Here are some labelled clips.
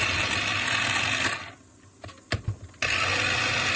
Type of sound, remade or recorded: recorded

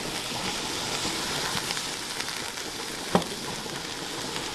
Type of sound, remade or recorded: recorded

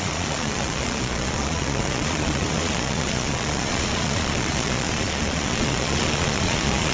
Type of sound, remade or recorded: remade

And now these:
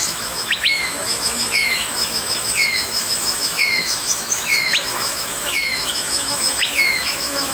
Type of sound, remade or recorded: remade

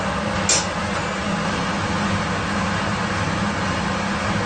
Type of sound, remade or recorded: recorded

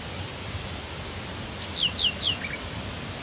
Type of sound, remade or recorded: recorded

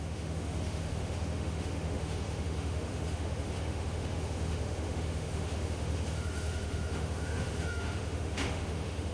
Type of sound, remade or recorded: remade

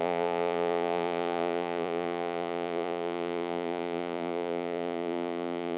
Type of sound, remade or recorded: remade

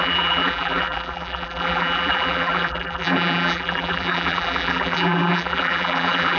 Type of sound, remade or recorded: remade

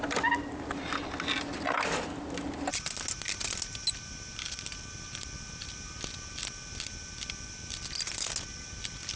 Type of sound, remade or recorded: recorded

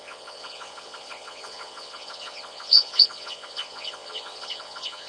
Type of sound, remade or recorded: remade